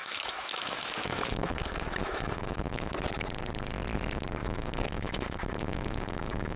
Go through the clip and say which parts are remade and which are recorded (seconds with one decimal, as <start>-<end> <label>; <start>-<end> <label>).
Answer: 0.0-2.9 remade; 2.9-4.4 recorded; 4.4-6.6 remade